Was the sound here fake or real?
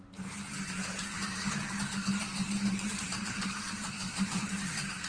fake